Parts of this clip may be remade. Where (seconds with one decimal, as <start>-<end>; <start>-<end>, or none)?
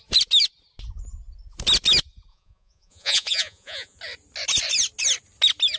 2.3-4.0